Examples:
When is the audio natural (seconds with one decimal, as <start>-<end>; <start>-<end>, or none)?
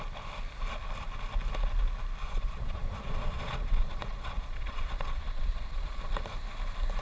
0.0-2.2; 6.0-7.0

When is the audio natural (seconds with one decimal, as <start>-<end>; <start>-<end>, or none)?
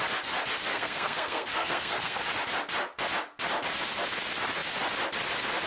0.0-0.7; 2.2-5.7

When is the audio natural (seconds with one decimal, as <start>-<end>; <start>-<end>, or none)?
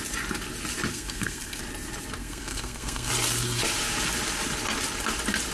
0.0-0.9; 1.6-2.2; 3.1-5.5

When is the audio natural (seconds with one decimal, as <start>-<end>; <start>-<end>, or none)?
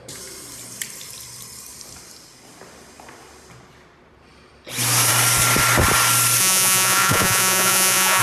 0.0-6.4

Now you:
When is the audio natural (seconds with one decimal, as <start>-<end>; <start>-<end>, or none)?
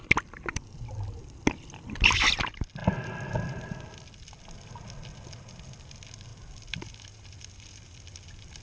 0.0-2.8; 4.7-6.3